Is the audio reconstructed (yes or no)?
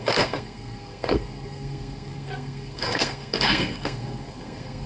yes